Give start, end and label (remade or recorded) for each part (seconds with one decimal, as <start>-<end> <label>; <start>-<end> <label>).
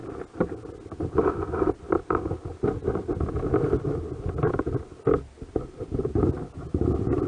0.0-7.3 recorded